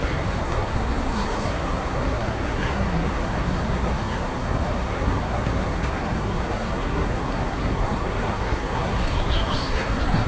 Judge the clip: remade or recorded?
remade